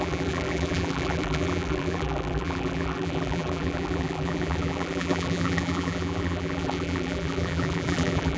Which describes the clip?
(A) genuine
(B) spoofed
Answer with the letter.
B